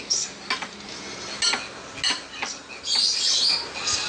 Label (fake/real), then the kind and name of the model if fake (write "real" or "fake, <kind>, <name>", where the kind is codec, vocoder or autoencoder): real